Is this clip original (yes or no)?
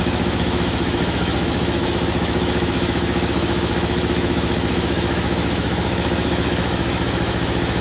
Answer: no